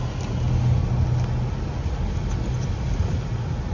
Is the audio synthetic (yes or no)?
no